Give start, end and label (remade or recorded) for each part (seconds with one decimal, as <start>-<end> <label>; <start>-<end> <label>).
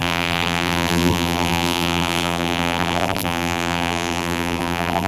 0.0-5.1 remade